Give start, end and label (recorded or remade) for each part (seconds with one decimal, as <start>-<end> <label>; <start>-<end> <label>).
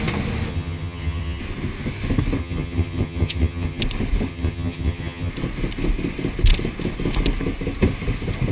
0.0-0.5 recorded; 0.5-1.4 remade; 1.4-2.4 recorded; 2.4-3.8 remade; 3.8-4.3 recorded; 4.3-5.3 remade; 5.3-8.5 recorded